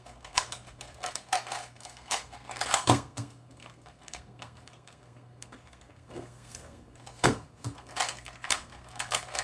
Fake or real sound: fake